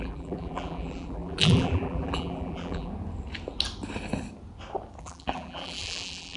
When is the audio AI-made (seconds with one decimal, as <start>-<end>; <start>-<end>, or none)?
0.0-2.9; 5.0-6.4